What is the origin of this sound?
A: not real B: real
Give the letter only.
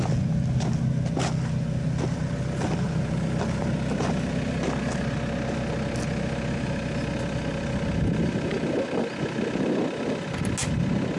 B